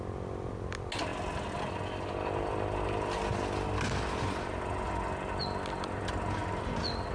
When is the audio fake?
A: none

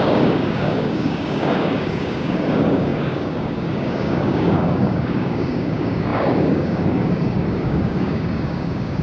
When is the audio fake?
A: 0.0-9.0 (codec, DAC)